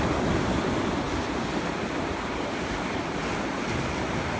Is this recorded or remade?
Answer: recorded